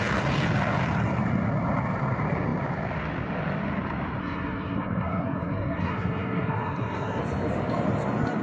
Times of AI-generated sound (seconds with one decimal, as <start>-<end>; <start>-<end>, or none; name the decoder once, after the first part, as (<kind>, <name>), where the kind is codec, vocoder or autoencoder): 4.2-7.2 (codec, SNAC)